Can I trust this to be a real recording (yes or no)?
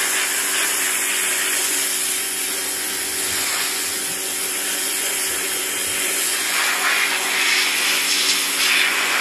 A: no